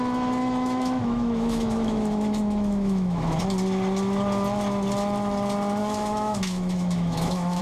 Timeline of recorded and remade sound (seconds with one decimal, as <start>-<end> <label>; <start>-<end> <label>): 0.0-0.4 recorded; 0.4-3.4 remade; 3.4-5.8 recorded; 5.8-7.6 remade